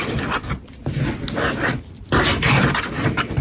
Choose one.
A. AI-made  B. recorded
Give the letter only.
B